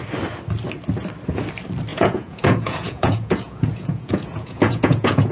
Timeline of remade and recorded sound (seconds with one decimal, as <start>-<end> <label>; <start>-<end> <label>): 0.0-1.9 recorded; 1.9-5.3 remade